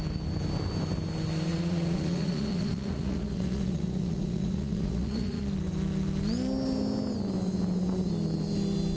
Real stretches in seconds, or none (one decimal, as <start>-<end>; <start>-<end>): 0.0-1.5; 5.4-9.0